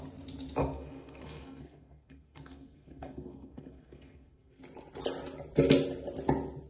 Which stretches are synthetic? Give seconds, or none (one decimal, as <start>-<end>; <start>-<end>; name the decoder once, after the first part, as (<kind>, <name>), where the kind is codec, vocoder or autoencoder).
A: 0.6-4.6 (codec, SNAC)